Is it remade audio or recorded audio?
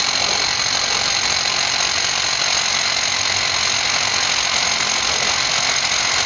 recorded